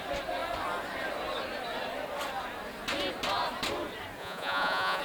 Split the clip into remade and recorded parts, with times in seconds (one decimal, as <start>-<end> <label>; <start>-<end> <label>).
0.0-4.2 recorded; 4.2-5.0 remade